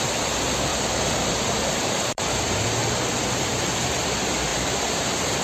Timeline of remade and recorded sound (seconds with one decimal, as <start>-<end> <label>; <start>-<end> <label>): 0.0-0.7 recorded; 0.7-2.4 remade; 2.4-4.5 recorded; 4.5-5.4 remade